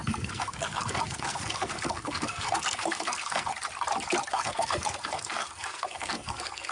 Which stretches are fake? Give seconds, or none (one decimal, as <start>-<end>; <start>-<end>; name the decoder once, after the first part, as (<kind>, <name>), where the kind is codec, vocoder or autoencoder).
0.0-3.5 (codec, SNAC); 4.3-6.7